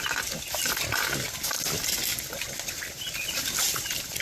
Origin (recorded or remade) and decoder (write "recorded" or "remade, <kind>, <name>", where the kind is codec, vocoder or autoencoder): recorded